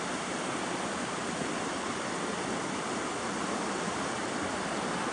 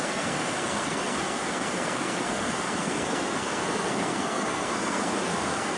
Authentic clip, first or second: first